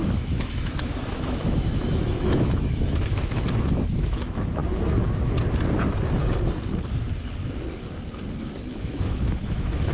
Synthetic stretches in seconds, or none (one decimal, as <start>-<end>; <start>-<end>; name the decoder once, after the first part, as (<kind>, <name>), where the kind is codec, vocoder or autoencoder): 0.0-4.6 (autoencoder, DAC-VAE); 8.5-9.9